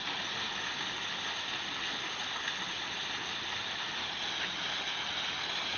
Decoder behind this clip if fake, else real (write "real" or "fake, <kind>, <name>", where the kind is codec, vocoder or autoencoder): real